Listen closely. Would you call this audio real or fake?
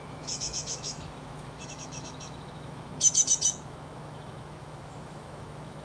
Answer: fake